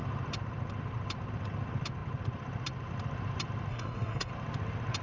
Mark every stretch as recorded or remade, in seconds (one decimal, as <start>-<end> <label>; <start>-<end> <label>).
0.0-3.7 recorded; 3.7-4.3 remade; 4.3-5.0 recorded